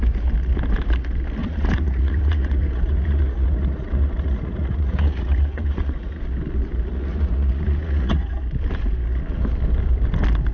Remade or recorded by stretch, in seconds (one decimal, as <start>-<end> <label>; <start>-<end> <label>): 0.0-1.4 recorded; 1.4-6.2 remade; 6.2-6.9 recorded; 6.9-8.3 remade; 8.3-10.5 recorded